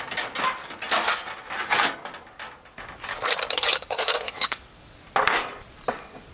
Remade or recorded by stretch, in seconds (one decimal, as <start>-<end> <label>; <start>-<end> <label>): 0.0-3.1 recorded; 3.1-5.1 remade; 5.1-6.3 recorded